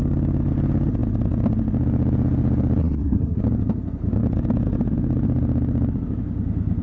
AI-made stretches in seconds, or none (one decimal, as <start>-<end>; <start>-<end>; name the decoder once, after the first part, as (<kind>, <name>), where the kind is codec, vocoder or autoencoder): 2.8-3.4 (codec, SNAC)